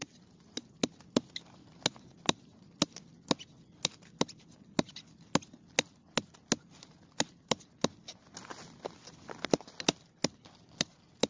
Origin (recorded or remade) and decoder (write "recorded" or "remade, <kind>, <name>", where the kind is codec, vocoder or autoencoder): recorded